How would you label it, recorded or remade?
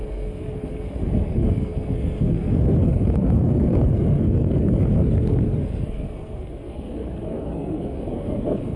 remade